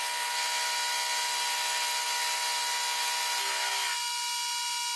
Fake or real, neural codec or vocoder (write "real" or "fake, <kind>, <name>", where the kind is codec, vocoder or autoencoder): real